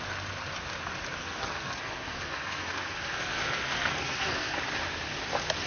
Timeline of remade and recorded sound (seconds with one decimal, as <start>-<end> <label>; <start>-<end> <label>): 0.0-1.2 recorded; 1.2-4.6 remade; 4.6-5.7 recorded